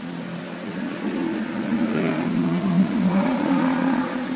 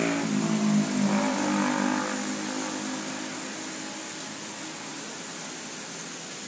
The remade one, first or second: first